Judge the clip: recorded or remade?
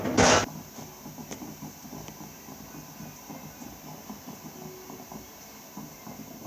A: recorded